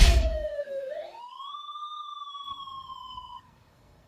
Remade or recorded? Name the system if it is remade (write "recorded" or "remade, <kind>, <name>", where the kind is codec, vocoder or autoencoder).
remade, codec, SNAC